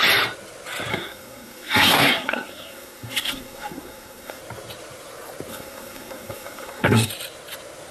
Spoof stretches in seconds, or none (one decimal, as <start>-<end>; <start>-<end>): 0.9-4.4; 5.5-7.1